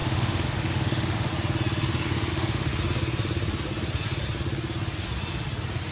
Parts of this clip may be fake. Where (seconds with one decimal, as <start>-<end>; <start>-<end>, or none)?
0.0-1.3; 2.3-2.7